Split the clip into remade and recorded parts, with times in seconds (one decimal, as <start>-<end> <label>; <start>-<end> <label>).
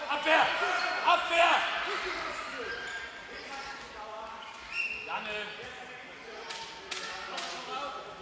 0.0-0.8 recorded; 0.8-3.7 remade; 3.7-6.1 recorded; 6.1-6.8 remade; 6.8-8.2 recorded